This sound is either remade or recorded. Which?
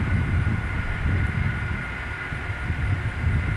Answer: recorded